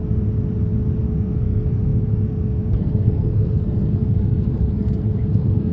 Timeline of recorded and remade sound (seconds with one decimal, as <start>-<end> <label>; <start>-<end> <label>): 0.0-1.0 recorded; 1.0-5.7 remade